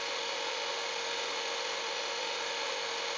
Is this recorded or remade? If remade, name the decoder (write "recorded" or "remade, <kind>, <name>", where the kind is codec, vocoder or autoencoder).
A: remade, autoencoder, DAC-VAE